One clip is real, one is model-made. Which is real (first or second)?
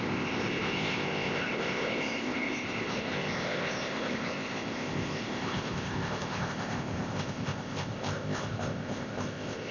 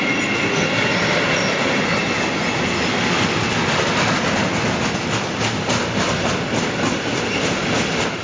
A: second